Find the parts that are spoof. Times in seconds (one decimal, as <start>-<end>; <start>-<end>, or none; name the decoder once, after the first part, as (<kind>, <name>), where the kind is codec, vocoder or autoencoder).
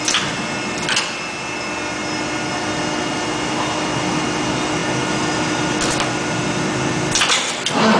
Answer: none